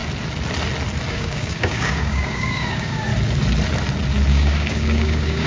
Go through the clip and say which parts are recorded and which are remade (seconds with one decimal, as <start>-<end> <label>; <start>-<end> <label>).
0.0-1.1 recorded; 1.1-3.1 remade; 3.1-4.3 recorded; 4.3-5.5 remade